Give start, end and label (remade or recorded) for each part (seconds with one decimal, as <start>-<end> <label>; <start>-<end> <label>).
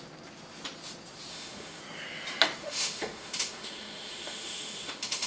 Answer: 0.0-1.3 recorded; 1.3-1.8 remade; 1.8-2.6 recorded; 2.6-5.3 remade